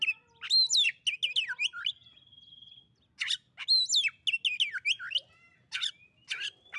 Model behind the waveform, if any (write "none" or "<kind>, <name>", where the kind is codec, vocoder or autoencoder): none